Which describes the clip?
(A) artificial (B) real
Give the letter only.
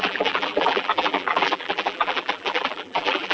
A